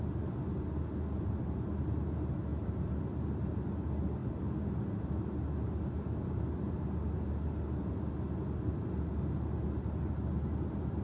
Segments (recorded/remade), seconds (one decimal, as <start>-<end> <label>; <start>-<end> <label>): 0.0-11.0 recorded